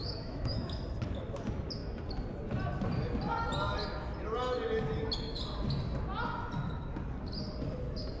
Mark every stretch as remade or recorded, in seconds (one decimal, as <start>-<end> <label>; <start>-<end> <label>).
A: 0.0-0.8 remade; 0.8-8.2 recorded